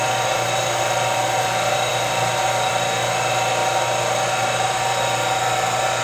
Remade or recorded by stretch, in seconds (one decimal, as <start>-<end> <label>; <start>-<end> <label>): 0.0-6.0 recorded